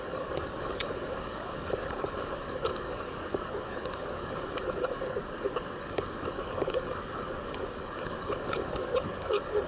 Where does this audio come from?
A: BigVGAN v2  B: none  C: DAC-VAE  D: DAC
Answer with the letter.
D